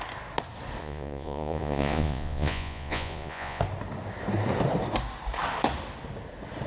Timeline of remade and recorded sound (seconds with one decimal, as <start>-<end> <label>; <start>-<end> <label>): 0.0-0.8 recorded; 0.8-3.6 remade; 3.6-6.7 recorded

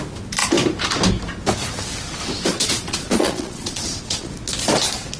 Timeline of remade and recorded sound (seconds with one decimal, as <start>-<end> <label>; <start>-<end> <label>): 0.0-2.5 recorded; 2.5-4.3 remade; 4.3-5.2 recorded

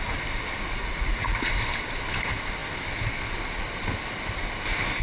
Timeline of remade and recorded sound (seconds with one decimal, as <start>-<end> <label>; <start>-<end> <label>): 0.0-0.8 recorded; 0.8-1.5 remade; 1.5-5.0 recorded

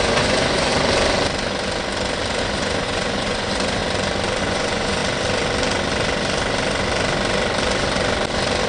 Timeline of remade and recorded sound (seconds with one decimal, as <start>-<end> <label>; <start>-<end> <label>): 0.0-0.7 remade; 0.7-2.4 recorded; 2.4-3.8 remade; 3.8-4.4 recorded; 4.4-5.0 remade; 5.0-8.7 recorded

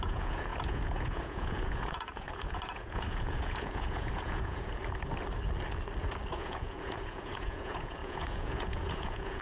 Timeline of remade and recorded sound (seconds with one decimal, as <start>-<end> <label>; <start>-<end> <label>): 0.0-4.8 remade; 4.8-6.3 recorded; 6.3-9.4 remade

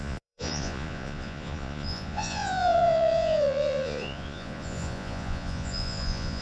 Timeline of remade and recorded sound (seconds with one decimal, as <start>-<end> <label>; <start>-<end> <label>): 0.0-6.4 remade

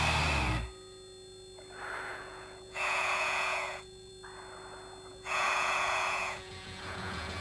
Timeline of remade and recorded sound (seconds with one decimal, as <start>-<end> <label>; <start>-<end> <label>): 0.0-2.1 recorded; 2.1-4.1 remade; 4.1-5.1 recorded; 5.1-7.4 remade